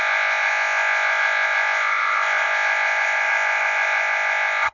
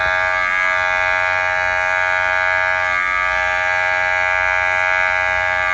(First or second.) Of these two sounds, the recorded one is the second